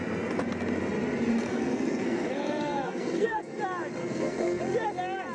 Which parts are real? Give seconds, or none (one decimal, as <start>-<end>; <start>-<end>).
0.0-1.3; 3.6-4.0; 4.6-5.3